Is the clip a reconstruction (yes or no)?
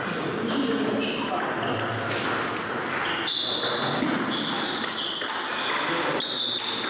no